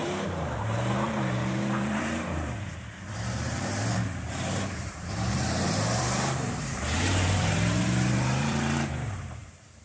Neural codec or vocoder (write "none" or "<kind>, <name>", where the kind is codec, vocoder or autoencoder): vocoder, BigVGAN v2